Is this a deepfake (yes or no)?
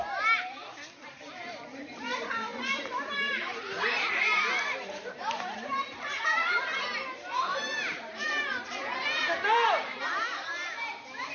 yes